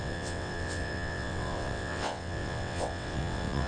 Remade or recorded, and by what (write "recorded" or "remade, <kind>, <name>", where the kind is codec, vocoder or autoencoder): remade, vocoder, WaveNeXt